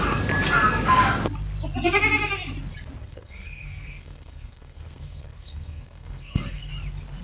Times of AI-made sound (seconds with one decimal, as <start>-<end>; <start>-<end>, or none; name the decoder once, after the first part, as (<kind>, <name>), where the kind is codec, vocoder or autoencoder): 3.0-6.7 (codec, SNAC)